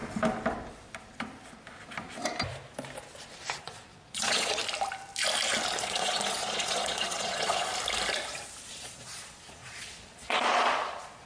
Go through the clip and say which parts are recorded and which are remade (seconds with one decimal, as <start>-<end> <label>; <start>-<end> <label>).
0.0-3.6 recorded; 3.6-4.6 remade; 4.6-5.8 recorded; 5.8-7.7 remade; 7.7-8.7 recorded; 8.7-11.3 remade